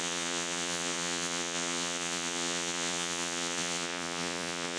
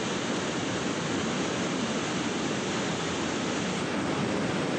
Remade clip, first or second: first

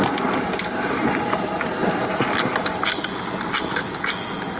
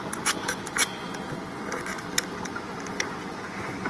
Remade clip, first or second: second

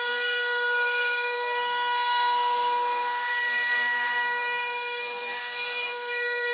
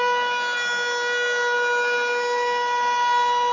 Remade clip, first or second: first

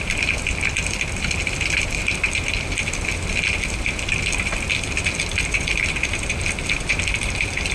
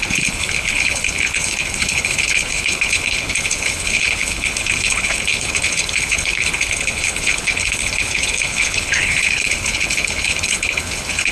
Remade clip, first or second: second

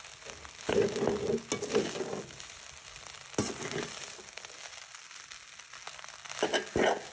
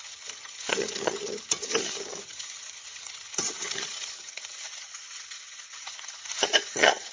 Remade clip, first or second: second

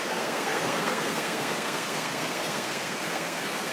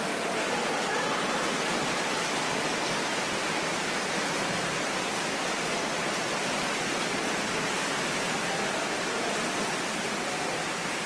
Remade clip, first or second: first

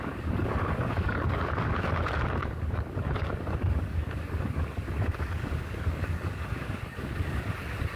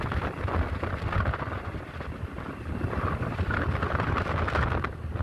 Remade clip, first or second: first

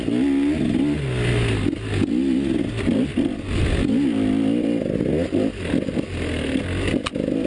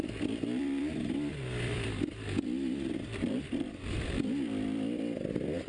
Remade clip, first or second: second